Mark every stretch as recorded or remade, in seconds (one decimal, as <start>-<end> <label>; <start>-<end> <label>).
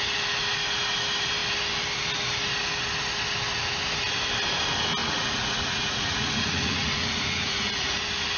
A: 0.0-5.0 recorded; 5.0-8.0 remade; 8.0-8.4 recorded